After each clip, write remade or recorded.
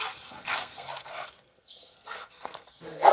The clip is remade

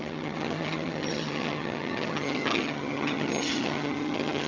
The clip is remade